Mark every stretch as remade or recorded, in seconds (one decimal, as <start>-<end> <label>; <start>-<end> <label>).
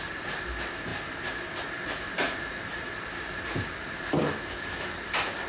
0.0-5.5 recorded